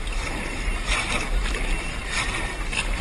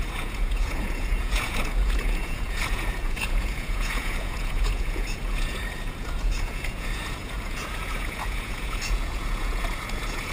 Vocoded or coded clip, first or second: second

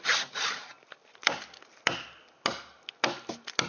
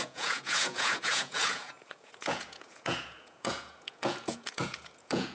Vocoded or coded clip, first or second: second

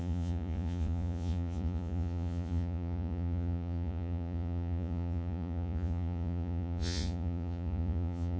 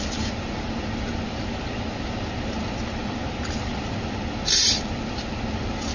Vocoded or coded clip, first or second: first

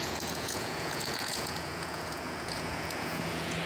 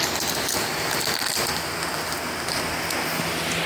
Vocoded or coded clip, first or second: first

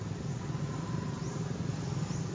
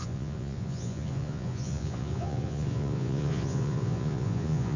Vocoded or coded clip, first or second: second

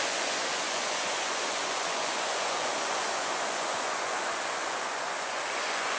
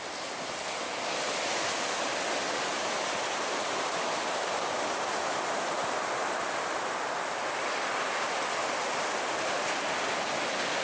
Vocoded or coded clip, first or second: first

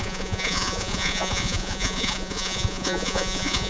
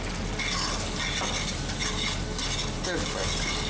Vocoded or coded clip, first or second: first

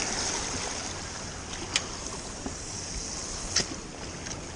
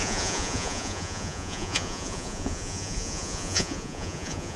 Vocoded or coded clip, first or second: second